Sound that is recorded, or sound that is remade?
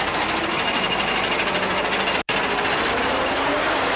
recorded